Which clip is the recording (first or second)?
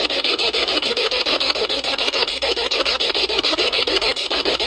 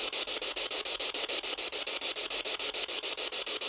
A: second